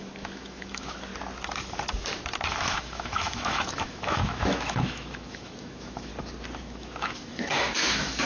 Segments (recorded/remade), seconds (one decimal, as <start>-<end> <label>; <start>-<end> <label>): 0.0-1.1 remade; 1.1-2.6 recorded; 2.6-6.1 remade; 6.1-6.6 recorded; 6.6-8.3 remade